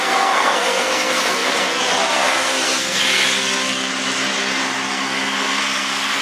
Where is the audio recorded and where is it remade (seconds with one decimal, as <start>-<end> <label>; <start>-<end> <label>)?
0.0-3.9 remade; 3.9-4.9 recorded; 4.9-6.2 remade